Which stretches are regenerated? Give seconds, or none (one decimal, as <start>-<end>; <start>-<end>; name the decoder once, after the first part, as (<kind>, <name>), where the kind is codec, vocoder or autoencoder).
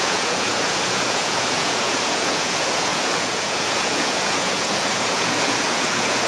0.0-6.3 (vocoder, Vocos)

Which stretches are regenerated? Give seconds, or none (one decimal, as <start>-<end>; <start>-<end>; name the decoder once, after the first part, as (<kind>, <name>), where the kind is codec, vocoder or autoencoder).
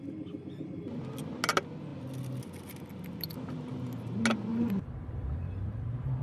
4.5-6.2 (vocoder, BigVGAN v2)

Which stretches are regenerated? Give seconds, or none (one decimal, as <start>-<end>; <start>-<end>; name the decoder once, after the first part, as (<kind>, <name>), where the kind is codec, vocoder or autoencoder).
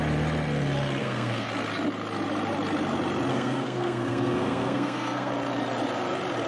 1.0-1.5 (codec, SNAC); 3.3-5.3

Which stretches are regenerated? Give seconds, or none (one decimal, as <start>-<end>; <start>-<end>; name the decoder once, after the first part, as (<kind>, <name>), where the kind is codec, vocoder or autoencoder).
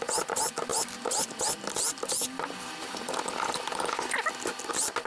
none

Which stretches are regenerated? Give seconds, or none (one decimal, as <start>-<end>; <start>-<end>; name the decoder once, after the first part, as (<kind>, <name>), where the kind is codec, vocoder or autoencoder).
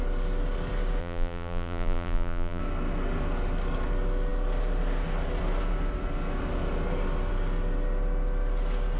1.0-2.6 (vocoder, BigVGAN v2)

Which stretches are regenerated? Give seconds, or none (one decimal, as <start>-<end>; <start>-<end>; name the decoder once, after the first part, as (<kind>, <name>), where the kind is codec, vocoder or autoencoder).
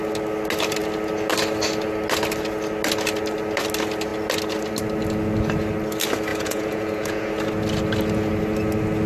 6.3-7.3 (vocoder, Vocos)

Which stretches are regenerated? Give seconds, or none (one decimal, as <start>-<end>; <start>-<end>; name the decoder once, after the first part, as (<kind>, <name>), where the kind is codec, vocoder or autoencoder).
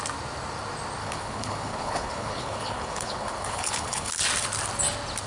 1.0-4.2 (codec, HILCodec)